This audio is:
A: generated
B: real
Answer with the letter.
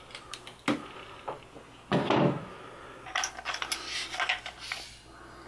B